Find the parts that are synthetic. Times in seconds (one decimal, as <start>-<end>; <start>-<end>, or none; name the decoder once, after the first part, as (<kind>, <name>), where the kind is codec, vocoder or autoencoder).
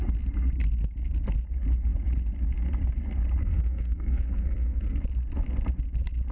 3.4-5.0 (codec, SNAC)